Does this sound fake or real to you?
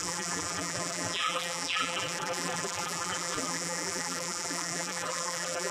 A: fake